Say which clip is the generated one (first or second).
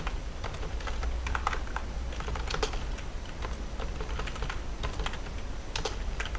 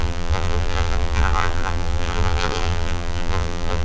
second